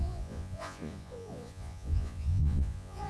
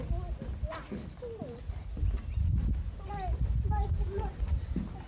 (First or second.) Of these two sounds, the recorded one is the second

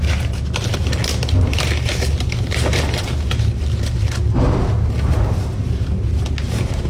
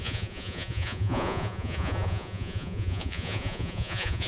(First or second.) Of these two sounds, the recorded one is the first